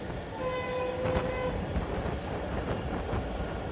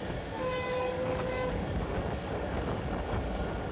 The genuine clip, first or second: first